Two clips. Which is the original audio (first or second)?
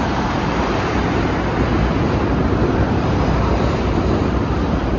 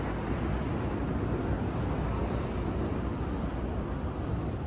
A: second